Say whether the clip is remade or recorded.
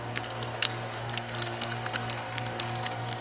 remade